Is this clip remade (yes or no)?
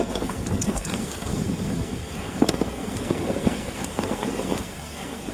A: yes